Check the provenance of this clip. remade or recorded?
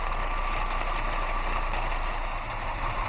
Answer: recorded